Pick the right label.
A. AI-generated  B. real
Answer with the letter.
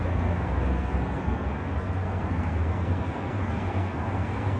A